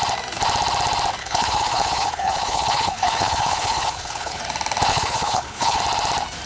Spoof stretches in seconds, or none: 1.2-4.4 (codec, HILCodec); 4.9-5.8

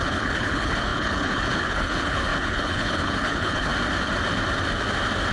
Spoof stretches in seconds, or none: 0.0-3.7 (codec, HILCodec)

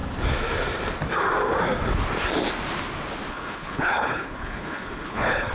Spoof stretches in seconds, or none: 3.3-5.5 (codec, HILCodec)

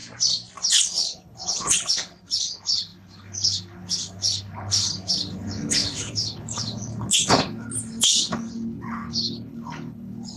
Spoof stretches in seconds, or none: 0.7-10.4 (codec, HILCodec)